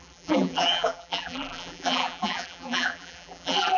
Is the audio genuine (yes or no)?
no